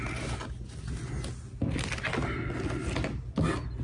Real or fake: real